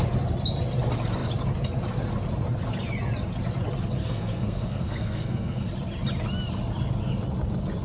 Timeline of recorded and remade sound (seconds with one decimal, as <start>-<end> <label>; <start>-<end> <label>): 0.0-4.0 recorded; 4.0-5.7 remade; 5.7-7.8 recorded